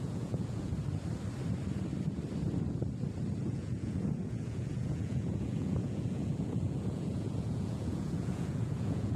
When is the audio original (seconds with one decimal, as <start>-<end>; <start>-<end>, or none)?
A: 0.7-3.4